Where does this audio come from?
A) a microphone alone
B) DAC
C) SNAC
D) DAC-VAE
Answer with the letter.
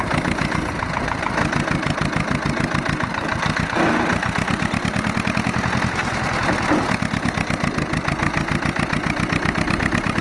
A